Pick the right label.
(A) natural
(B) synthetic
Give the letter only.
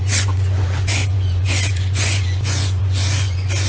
B